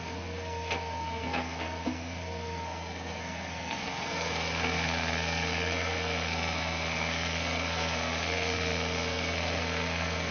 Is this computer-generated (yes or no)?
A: yes